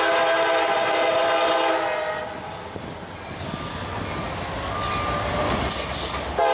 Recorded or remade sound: recorded